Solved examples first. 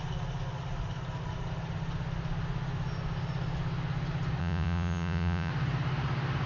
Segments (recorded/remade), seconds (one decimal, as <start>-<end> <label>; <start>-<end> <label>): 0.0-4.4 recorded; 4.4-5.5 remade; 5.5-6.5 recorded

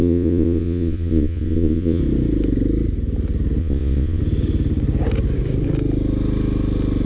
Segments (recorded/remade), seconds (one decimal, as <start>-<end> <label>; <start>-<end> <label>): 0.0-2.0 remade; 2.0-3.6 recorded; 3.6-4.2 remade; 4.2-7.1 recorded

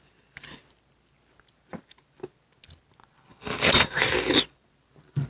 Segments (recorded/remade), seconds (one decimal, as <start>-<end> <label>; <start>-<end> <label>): 0.0-3.3 recorded; 3.3-4.7 remade; 4.7-5.3 recorded

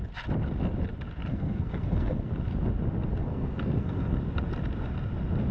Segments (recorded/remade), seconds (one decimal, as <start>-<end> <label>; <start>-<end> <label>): 0.0-1.3 recorded; 1.3-2.3 remade; 2.3-3.2 recorded; 3.2-4.2 remade; 4.2-5.5 recorded

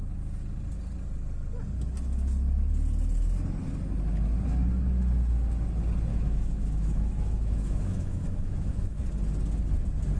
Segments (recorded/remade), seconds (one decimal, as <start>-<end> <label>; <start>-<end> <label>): 0.0-6.1 recorded; 6.1-9.0 remade; 9.0-10.2 recorded

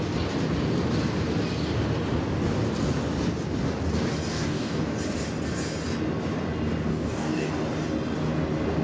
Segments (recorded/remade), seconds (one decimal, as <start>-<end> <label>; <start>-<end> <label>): 0.0-4.3 recorded; 4.3-5.0 remade; 5.0-6.9 recorded; 6.9-7.5 remade; 7.5-8.8 recorded